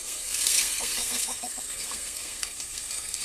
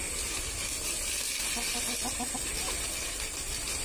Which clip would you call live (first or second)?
second